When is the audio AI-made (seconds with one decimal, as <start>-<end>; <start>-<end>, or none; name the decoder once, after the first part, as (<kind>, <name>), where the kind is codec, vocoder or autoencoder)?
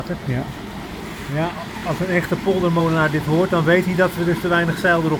none